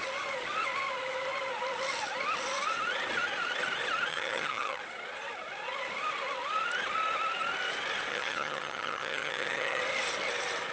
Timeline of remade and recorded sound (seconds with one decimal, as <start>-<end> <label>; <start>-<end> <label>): 0.0-4.1 recorded; 4.1-4.8 remade; 4.8-8.1 recorded; 8.1-9.8 remade; 9.8-10.7 recorded